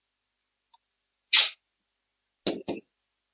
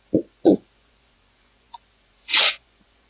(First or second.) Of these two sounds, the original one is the first